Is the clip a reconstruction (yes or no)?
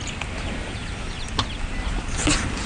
no